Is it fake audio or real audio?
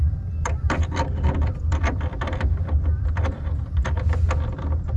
fake